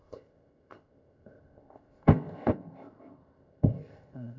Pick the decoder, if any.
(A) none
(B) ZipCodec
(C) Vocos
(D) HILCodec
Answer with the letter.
B